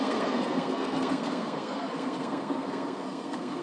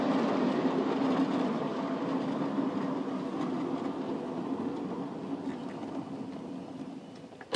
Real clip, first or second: second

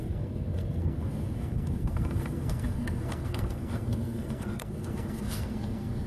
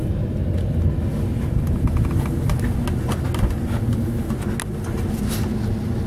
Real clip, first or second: second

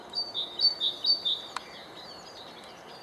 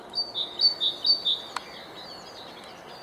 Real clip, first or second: second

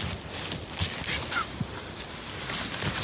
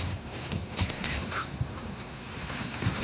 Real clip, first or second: first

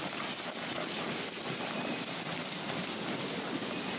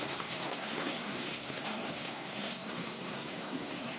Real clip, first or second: first